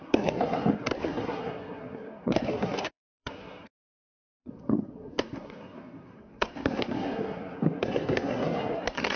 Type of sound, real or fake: fake